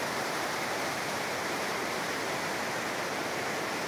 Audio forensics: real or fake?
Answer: real